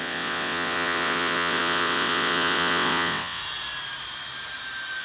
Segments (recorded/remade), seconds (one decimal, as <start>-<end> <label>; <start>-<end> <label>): 0.0-3.4 remade; 3.4-5.0 recorded

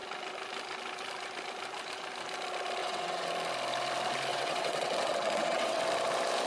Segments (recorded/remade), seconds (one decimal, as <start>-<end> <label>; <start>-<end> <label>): 0.0-2.8 recorded; 2.8-3.3 remade; 3.3-4.3 recorded; 4.3-5.8 remade; 5.8-6.5 recorded

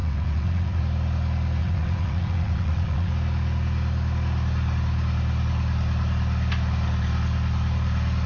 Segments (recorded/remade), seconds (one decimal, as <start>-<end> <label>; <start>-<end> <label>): 0.0-0.8 remade; 0.8-1.6 recorded; 1.6-3.1 remade; 3.1-8.3 recorded

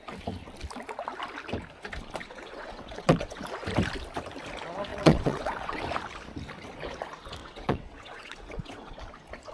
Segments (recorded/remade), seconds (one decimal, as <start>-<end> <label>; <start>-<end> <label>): 0.0-2.2 recorded; 2.2-3.4 remade; 3.4-4.9 recorded; 4.9-5.8 remade; 5.8-7.4 recorded; 7.4-9.0 remade; 9.0-9.5 recorded

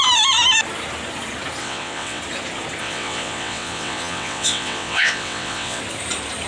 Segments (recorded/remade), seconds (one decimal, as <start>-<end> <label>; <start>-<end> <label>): 0.0-1.6 recorded; 1.6-2.2 remade; 2.2-2.8 recorded; 2.8-5.8 remade; 5.8-6.5 recorded